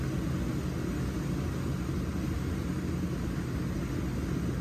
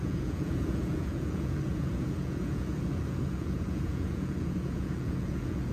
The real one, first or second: first